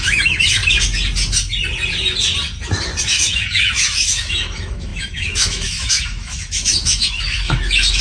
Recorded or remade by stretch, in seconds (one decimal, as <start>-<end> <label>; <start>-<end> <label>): 0.0-0.6 remade; 0.6-3.0 recorded; 3.0-8.0 remade